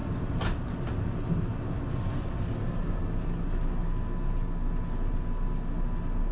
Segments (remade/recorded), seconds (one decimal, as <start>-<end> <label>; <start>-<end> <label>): 0.0-6.3 recorded